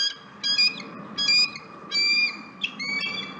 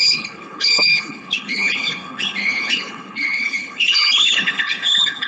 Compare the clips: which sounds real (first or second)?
first